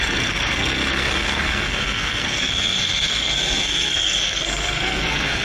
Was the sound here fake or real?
fake